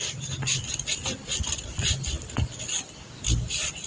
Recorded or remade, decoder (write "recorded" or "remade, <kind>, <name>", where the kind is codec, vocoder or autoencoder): remade, vocoder, BigVGAN v2